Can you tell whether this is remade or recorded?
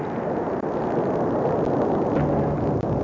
recorded